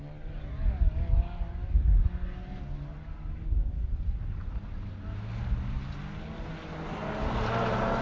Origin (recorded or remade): recorded